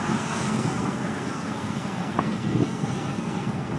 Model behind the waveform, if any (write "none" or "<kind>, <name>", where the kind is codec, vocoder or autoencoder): codec, SNAC